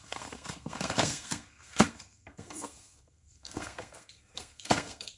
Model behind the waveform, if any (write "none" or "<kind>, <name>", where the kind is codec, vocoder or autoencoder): codec, SNAC